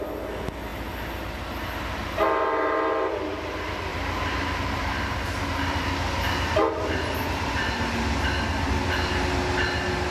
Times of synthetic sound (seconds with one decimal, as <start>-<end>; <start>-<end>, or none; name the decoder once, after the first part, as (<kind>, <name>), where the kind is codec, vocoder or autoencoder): 3.9-5.8 (vocoder, BigVGAN v2)

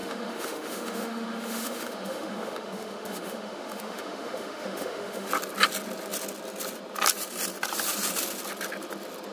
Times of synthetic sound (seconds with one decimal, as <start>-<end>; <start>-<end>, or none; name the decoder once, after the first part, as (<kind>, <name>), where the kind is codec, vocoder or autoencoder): 0.0-5.3 (autoencoder, DAC-VAE)

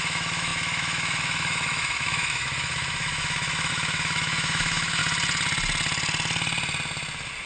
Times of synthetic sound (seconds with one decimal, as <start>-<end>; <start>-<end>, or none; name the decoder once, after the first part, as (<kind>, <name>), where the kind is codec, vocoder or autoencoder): 0.0-5.0 (autoencoder, DAC-VAE)